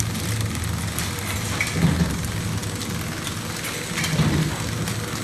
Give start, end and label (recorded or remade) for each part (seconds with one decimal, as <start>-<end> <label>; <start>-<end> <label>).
0.0-5.2 recorded